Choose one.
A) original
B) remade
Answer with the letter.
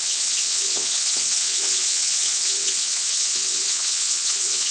B